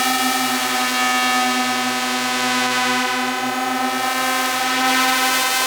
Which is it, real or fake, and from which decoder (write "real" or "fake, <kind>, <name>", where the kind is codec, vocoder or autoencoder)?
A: real